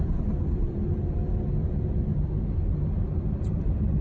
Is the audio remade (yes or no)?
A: yes